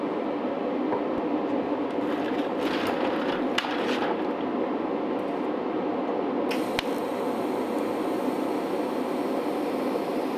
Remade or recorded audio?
recorded